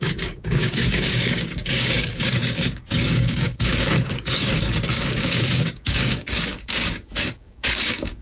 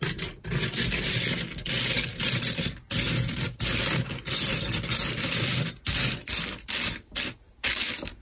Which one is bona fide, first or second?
second